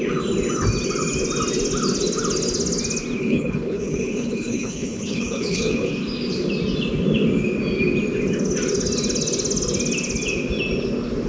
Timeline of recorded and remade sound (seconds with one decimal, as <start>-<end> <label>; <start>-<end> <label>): 0.0-3.2 recorded; 3.2-5.9 remade; 5.9-11.3 recorded